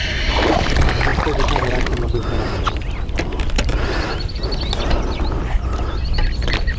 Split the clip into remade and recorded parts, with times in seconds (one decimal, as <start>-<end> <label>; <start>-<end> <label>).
0.0-1.1 recorded; 1.1-2.6 remade; 2.6-3.7 recorded; 3.7-4.4 remade; 4.4-6.8 recorded